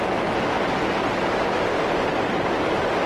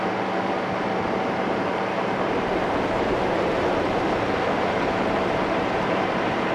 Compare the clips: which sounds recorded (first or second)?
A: first